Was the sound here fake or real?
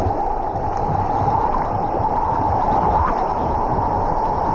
real